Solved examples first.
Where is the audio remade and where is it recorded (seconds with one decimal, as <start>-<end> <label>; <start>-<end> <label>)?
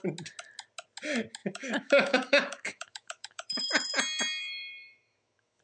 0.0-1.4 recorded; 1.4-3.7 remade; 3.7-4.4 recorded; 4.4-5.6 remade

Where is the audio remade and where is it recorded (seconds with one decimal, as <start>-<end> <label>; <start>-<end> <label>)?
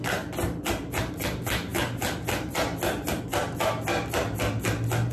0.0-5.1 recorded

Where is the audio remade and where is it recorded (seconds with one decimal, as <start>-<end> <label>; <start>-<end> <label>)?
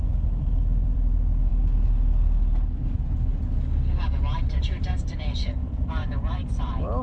0.0-1.5 remade; 1.5-4.4 recorded; 4.4-6.0 remade; 6.0-6.6 recorded; 6.6-7.0 remade